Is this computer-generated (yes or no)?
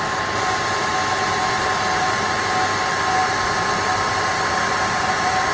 no